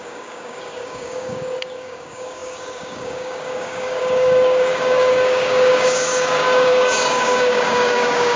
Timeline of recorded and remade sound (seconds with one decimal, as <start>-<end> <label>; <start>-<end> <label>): 0.0-8.4 remade